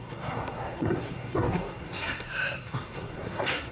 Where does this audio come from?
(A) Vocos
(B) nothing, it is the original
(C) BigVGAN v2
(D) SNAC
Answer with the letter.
D